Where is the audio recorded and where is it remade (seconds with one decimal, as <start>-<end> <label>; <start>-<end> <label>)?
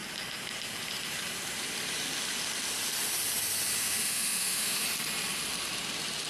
0.0-3.8 recorded; 3.8-4.8 remade; 4.8-6.3 recorded